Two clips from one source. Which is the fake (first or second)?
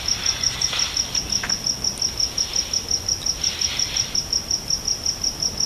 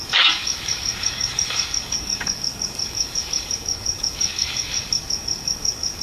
second